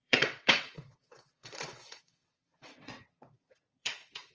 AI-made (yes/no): yes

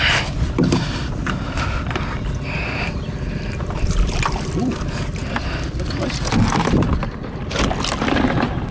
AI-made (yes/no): no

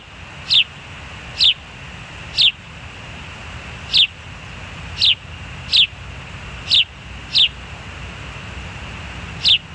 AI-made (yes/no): no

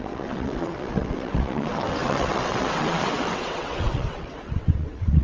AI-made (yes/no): yes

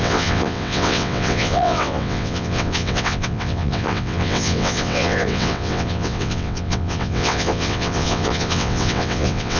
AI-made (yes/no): yes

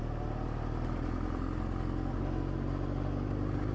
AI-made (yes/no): no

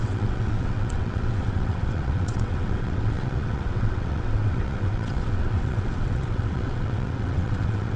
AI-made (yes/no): yes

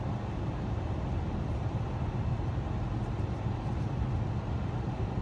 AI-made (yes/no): no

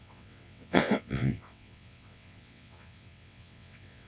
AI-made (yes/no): yes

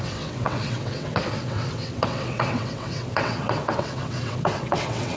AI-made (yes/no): yes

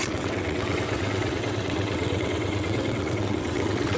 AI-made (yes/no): yes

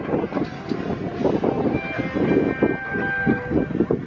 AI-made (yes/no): no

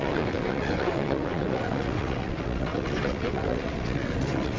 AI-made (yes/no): yes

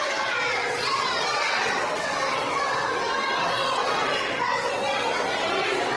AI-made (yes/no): yes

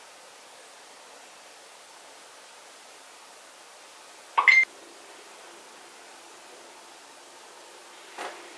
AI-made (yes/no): no